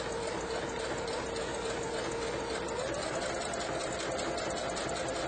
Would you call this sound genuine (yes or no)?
yes